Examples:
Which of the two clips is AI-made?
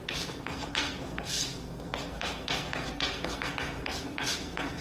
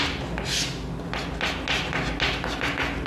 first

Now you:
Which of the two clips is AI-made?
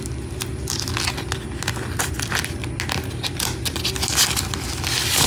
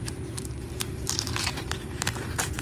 second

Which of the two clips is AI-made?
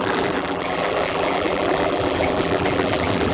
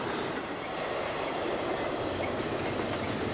first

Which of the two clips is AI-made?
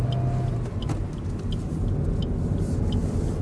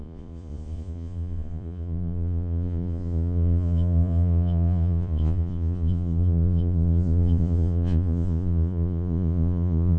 second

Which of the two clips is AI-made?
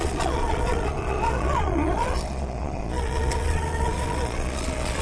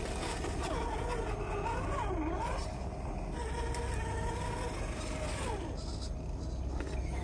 first